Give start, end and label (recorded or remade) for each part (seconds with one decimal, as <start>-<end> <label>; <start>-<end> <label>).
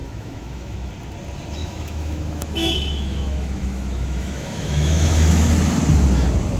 0.0-0.9 remade; 0.9-1.6 recorded; 1.6-5.5 remade; 5.5-6.6 recorded